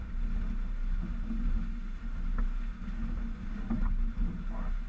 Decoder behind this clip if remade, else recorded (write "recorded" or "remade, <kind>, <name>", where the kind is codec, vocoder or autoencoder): recorded